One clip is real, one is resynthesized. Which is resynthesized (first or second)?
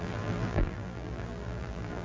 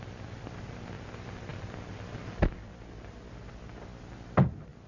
first